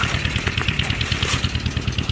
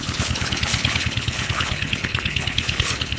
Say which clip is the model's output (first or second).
second